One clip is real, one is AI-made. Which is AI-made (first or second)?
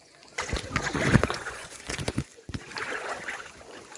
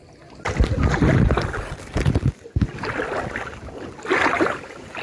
first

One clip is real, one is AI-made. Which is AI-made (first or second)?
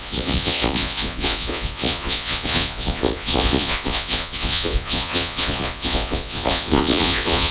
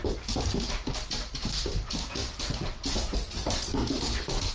first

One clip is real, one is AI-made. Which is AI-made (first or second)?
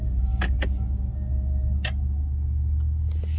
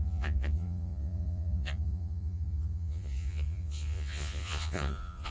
second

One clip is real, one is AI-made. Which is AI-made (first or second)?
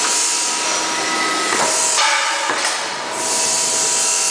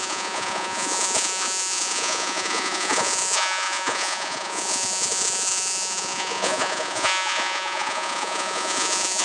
second